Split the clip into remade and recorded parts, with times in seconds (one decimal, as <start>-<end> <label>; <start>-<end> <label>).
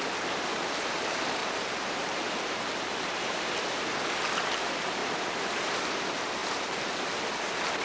0.0-1.4 recorded; 1.4-3.5 remade; 3.5-5.0 recorded; 5.0-6.0 remade; 6.0-6.4 recorded; 6.4-7.2 remade; 7.2-7.8 recorded